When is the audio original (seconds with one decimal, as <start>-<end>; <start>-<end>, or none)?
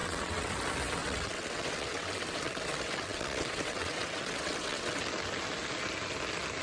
0.5-1.0; 5.0-6.6